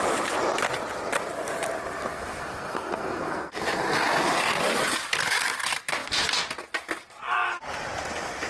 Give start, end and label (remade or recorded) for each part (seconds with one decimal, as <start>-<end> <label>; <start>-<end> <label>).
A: 0.0-2.1 recorded; 2.1-3.8 remade; 3.8-8.5 recorded